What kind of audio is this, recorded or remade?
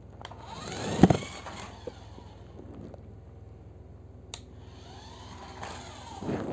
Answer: recorded